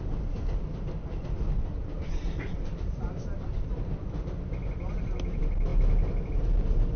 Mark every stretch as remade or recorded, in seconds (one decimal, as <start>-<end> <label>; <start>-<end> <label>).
0.0-1.6 recorded; 1.6-3.7 remade; 3.7-7.0 recorded